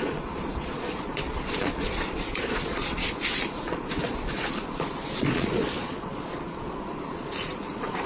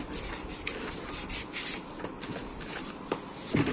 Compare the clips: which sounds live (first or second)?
second